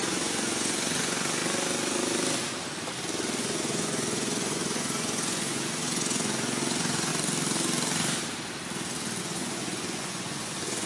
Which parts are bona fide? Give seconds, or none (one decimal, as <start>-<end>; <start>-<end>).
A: 1.4-3.4; 7.1-9.2